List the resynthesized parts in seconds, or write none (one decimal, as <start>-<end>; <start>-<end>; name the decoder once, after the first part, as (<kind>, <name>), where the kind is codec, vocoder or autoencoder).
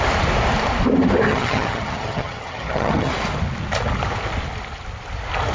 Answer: 1.3-3.1 (vocoder, HiFi-GAN)